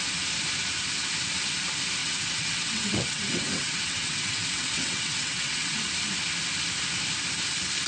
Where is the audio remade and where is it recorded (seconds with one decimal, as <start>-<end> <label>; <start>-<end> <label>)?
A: 0.0-2.0 recorded; 2.0-5.8 remade; 5.8-7.9 recorded